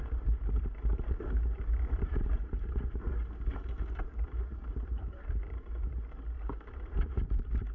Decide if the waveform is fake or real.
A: fake